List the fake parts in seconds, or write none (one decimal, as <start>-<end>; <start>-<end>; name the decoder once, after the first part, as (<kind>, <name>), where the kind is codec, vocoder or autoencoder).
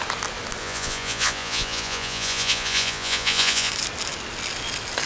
0.6-3.7 (vocoder, Vocos)